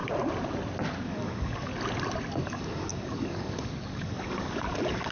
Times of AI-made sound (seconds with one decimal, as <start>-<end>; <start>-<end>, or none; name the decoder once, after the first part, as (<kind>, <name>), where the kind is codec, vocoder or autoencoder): 1.1-1.7 (codec, DAC); 2.4-5.1